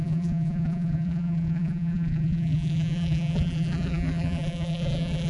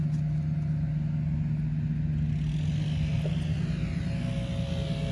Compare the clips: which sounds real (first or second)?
second